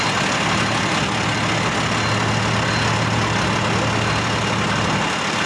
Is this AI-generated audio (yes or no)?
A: no